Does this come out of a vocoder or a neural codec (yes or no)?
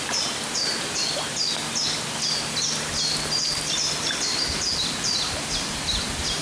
no